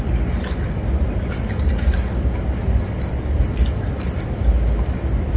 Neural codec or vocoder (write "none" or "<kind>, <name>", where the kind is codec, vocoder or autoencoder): none